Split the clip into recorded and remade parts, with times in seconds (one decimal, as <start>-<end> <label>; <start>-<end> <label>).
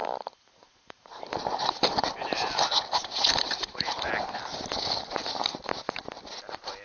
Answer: 0.0-4.1 remade; 4.1-6.8 recorded